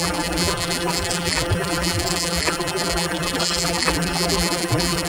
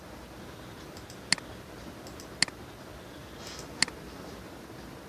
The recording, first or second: second